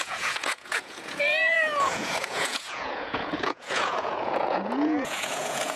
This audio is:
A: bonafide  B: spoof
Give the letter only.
B